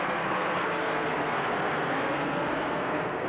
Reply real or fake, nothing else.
fake